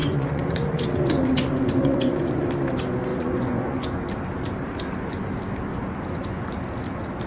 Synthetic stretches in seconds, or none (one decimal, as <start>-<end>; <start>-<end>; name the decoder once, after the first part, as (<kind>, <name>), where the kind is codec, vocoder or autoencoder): 0.0-2.5 (vocoder, Vocos); 3.1-4.0; 5.7-6.4